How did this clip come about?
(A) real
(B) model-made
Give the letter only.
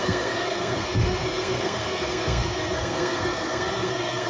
B